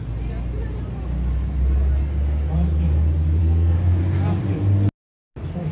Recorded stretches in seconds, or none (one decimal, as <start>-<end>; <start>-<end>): 0.0-3.4; 4.0-5.7